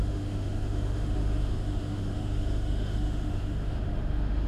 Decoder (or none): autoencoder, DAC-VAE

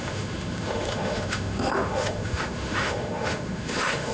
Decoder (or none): autoencoder, DAC-VAE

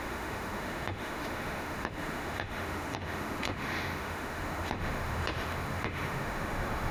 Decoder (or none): autoencoder, DAC-VAE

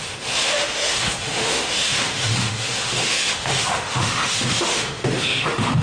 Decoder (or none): autoencoder, DAC-VAE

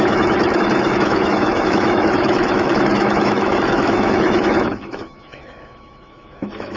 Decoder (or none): autoencoder, DAC-VAE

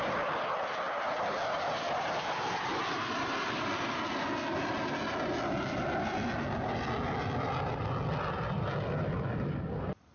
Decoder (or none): none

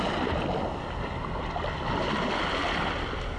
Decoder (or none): none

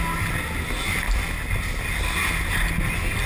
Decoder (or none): none